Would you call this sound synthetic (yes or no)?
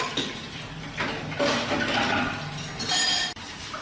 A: no